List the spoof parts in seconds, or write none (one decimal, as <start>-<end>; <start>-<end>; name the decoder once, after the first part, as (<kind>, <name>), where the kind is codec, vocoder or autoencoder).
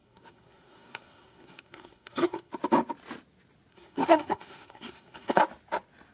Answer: 0.0-2.5 (codec, SNAC); 3.7-5.4